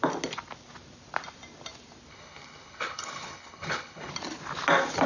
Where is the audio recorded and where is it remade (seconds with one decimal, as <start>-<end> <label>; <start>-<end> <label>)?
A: 0.0-2.1 recorded; 2.1-4.1 remade; 4.1-5.1 recorded